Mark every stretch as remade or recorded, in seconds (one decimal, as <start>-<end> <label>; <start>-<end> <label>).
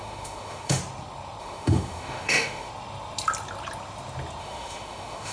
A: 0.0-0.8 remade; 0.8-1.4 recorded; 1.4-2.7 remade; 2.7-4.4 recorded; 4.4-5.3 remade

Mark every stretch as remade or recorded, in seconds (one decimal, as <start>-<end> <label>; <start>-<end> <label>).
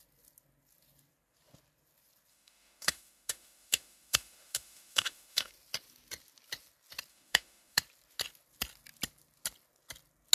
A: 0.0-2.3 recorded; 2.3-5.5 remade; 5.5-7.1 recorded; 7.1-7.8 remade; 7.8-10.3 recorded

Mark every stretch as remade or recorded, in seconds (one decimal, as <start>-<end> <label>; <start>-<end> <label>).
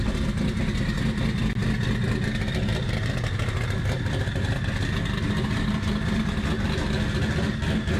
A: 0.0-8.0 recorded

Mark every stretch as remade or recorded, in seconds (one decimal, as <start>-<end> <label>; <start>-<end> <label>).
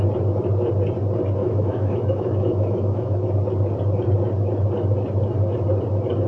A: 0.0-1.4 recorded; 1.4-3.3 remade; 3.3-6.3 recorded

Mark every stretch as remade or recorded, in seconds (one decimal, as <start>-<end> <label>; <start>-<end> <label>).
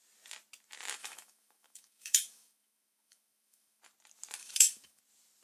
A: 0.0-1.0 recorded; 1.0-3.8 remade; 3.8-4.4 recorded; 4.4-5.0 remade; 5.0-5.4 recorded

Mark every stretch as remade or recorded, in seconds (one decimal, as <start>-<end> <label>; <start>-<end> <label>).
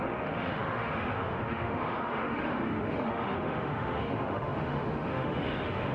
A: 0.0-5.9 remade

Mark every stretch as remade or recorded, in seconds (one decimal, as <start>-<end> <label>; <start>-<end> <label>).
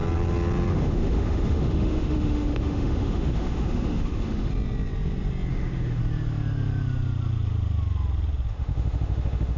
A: 0.0-0.7 recorded; 0.7-4.5 remade; 4.5-5.5 recorded; 5.5-6.0 remade; 6.0-8.5 recorded; 8.5-9.6 remade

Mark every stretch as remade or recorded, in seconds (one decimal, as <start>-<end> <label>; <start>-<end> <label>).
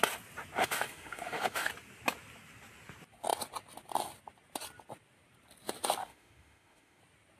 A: 0.0-0.6 recorded; 0.6-1.7 remade; 1.7-6.0 recorded; 6.0-7.0 remade; 7.0-7.4 recorded